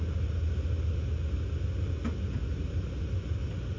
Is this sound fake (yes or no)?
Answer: no